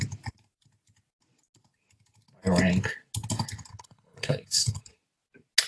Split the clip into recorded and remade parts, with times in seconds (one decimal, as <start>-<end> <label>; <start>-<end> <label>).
0.0-3.7 recorded; 3.7-4.9 remade; 4.9-5.7 recorded